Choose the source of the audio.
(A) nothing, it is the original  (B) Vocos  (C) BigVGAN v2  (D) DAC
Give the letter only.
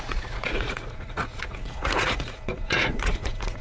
B